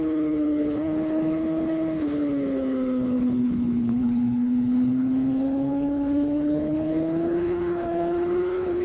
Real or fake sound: fake